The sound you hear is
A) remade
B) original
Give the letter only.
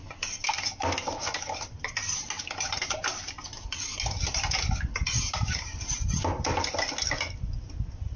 B